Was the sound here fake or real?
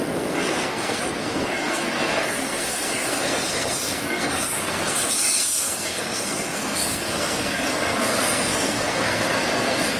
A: fake